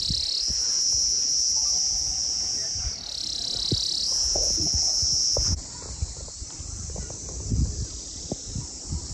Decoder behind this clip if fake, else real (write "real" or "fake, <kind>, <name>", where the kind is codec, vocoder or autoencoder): fake, vocoder, BigVGAN v2